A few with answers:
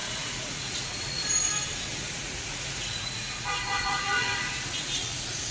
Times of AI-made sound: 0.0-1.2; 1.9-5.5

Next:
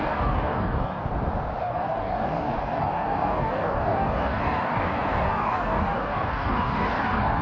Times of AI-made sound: 0.0-1.1; 1.6-7.4

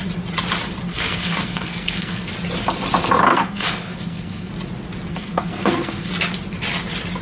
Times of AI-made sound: 0.9-2.3; 3.3-4.5; 5.1-6.1

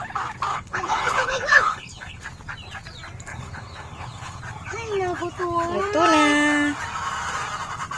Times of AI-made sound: 0.5-2.2; 3.3-4.4